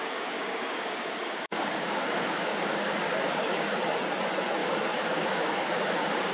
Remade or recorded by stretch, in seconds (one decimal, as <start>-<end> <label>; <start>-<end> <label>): 0.0-3.8 remade; 3.8-4.6 recorded; 4.6-6.3 remade